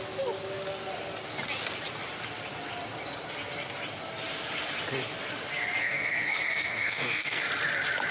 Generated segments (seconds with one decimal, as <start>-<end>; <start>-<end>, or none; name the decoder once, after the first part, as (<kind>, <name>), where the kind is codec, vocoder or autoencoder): 5.8-7.4 (codec, SNAC)